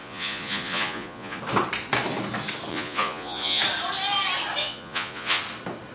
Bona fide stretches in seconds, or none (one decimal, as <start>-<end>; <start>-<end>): 1.4-2.7; 3.6-4.6; 5.4-5.9